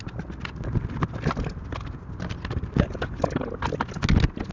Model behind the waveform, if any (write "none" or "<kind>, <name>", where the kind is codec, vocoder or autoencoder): none